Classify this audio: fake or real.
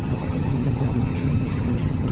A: fake